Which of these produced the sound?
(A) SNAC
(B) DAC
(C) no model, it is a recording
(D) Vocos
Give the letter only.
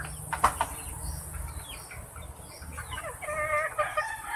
C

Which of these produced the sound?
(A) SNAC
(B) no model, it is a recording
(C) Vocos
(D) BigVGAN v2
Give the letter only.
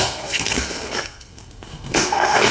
A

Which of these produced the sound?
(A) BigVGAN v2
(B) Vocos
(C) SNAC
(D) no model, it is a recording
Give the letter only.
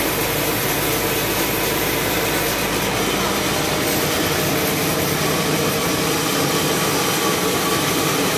D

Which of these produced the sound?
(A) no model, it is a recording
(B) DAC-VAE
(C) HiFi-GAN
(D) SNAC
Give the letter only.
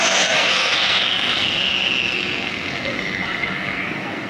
D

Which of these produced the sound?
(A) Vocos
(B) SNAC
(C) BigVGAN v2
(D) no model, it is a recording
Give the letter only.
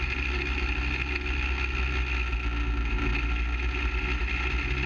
D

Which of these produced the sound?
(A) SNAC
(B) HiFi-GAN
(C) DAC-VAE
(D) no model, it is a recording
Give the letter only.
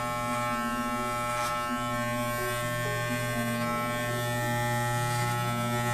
D